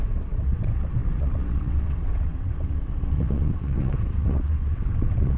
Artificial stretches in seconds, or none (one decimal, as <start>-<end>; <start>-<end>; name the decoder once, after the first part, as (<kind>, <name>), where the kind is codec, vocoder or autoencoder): 0.0-5.4 (vocoder, WaveNeXt)